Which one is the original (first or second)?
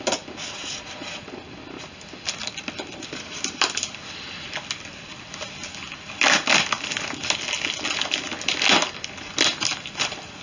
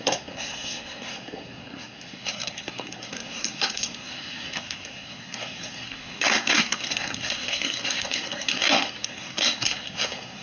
first